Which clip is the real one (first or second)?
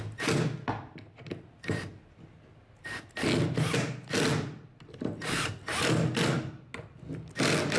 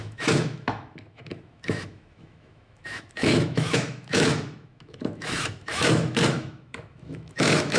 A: first